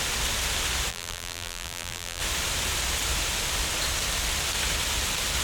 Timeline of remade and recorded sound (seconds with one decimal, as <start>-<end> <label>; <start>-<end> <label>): 0.0-0.9 recorded; 0.9-2.2 remade; 2.2-5.4 recorded